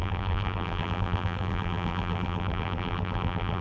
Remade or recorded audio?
remade